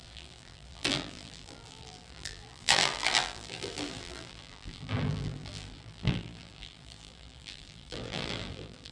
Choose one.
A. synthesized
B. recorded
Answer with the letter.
A